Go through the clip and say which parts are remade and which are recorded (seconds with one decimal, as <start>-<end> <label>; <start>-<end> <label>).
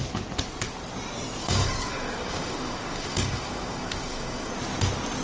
0.0-1.4 recorded; 1.4-4.5 remade; 4.5-5.2 recorded